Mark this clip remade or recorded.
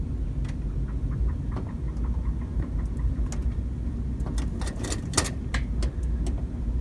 recorded